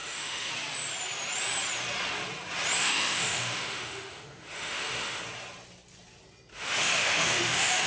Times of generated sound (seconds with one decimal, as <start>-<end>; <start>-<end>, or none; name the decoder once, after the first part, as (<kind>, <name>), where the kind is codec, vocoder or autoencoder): 0.0-0.5 (autoencoder, DAC-VAE); 2.8-5.2; 6.5-7.9